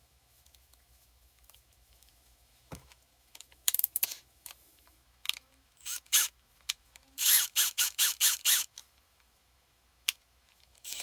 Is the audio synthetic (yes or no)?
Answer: yes